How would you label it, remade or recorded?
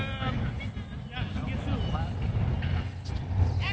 recorded